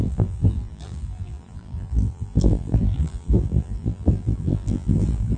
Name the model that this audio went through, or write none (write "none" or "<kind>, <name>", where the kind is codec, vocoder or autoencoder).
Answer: vocoder, BigVGAN v2